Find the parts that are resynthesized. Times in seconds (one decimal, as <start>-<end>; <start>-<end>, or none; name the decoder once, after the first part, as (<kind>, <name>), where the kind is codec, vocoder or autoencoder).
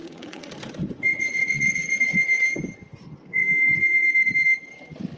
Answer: 0.0-0.5 (vocoder, Vocos); 1.1-1.9